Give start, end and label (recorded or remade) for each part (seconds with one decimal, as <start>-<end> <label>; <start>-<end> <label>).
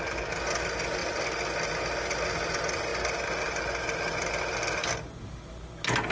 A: 0.0-6.1 recorded